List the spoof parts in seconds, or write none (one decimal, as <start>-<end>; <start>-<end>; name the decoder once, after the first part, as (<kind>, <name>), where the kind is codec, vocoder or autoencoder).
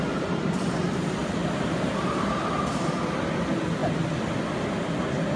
1.2-2.8 (vocoder, BigVGAN v2)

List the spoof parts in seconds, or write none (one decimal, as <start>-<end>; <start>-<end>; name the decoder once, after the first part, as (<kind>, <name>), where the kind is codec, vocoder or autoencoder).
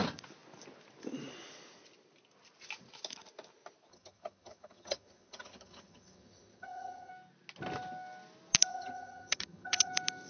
3.9-7.1 (vocoder, HiFi-GAN); 8.7-9.9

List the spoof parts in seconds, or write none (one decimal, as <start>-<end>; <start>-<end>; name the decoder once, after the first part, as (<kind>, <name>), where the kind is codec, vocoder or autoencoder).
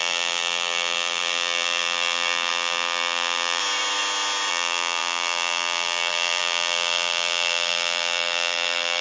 0.0-3.6 (vocoder, BigVGAN v2); 4.5-9.0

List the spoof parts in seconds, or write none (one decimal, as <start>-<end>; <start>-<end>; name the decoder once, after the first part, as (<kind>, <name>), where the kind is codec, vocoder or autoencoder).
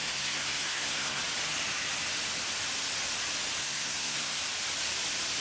0.0-1.2 (codec, SNAC); 3.6-4.4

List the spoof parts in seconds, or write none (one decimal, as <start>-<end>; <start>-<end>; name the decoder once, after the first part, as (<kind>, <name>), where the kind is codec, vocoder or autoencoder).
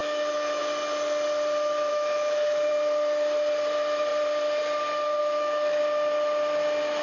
0.0-0.6 (autoencoder, DAC-VAE); 1.9-2.7; 5.2-5.8